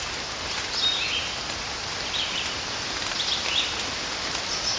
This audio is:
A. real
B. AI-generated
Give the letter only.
A